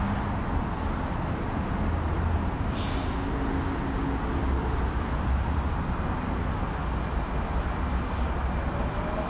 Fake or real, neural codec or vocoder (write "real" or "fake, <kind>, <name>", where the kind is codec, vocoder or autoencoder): real